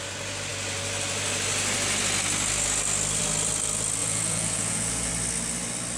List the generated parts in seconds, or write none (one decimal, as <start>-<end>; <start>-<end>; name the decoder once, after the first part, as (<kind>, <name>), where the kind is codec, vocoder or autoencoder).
4.0-5.1 (vocoder, Vocos)